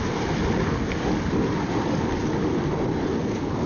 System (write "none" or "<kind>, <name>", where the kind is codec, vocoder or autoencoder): none